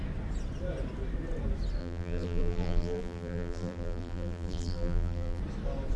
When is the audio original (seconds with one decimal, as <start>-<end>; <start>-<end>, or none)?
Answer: 0.0-1.8; 5.4-6.0